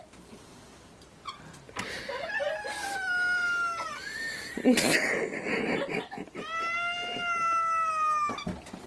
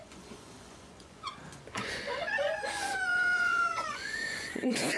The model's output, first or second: second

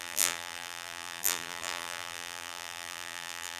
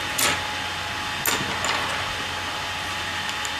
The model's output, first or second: first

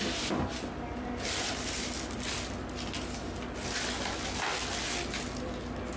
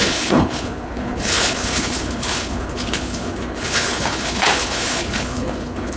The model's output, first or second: second